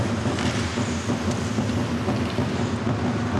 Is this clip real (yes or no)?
yes